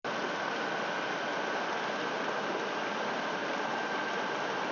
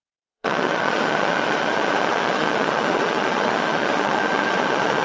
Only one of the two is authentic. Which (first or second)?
first